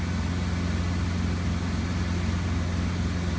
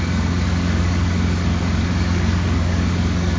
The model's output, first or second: second